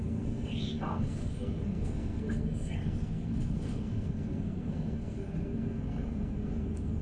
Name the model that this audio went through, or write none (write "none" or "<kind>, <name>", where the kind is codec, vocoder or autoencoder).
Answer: codec, SNAC